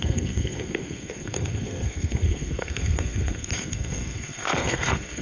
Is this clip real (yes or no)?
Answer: no